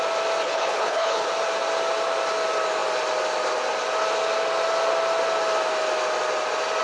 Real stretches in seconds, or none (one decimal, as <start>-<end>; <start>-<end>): 0.0-0.4; 1.3-6.8